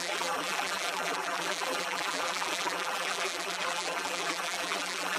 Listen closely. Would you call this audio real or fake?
fake